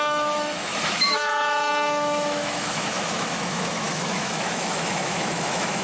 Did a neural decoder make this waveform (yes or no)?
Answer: yes